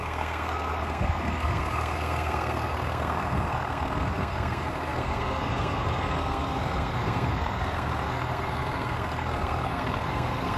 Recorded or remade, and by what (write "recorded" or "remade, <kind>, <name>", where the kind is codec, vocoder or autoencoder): remade, codec, SNAC